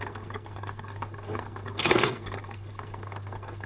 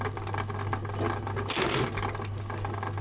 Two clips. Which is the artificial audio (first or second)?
first